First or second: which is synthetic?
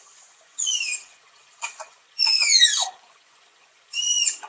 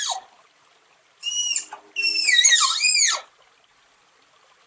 first